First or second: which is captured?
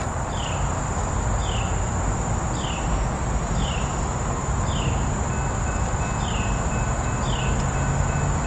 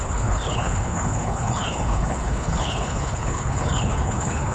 first